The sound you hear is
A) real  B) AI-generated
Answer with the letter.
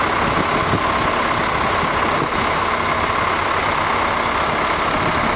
A